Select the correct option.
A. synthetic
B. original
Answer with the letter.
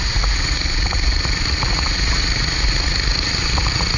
A